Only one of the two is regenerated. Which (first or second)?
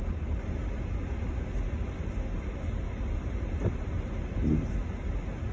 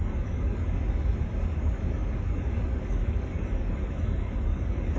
second